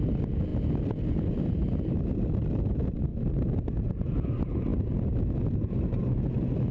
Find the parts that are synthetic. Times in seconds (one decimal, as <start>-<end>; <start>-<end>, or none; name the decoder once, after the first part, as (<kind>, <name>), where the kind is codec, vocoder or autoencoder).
none